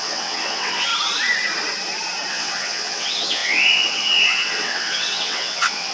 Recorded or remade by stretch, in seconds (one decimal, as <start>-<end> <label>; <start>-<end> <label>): 0.0-0.9 remade; 0.9-2.3 recorded; 2.3-5.9 remade